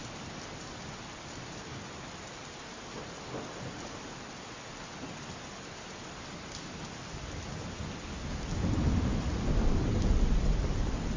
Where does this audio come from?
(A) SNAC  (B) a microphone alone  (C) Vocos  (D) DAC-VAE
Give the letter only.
B